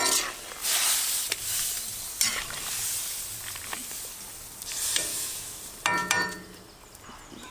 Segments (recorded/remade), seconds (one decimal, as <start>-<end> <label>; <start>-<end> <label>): 0.0-5.1 recorded; 5.1-5.6 remade; 5.6-7.5 recorded